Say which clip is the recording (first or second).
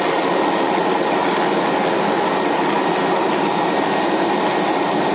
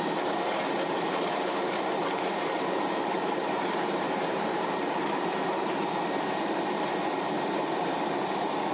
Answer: first